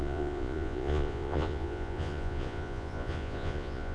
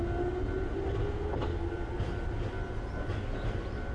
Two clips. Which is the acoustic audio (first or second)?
second